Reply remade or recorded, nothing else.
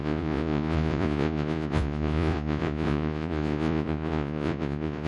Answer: remade